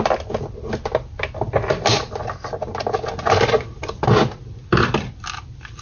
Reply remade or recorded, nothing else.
recorded